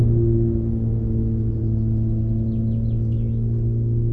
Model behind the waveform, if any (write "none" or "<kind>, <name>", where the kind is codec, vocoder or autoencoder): none